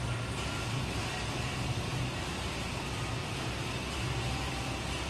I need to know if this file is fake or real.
real